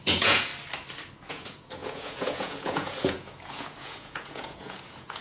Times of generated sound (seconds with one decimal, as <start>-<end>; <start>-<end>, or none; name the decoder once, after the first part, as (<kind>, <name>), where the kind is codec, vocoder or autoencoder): 0.0-0.5 (vocoder, Vocos); 1.3-5.2